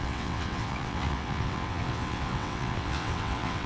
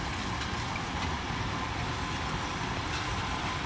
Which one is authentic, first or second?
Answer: second